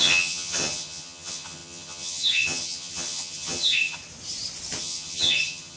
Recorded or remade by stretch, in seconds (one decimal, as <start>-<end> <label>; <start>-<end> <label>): 0.0-4.0 remade; 4.0-4.8 recorded; 4.8-5.8 remade